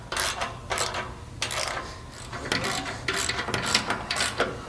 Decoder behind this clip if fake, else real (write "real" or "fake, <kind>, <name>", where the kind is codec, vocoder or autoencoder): real